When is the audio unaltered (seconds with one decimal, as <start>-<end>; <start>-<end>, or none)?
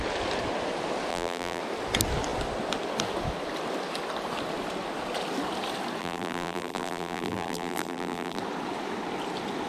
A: 0.0-1.1; 1.6-6.0; 8.4-9.7